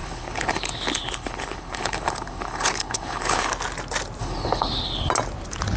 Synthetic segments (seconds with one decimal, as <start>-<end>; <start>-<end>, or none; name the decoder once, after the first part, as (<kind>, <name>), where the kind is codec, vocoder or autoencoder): 0.0-3.5 (codec, HILCodec); 4.2-5.1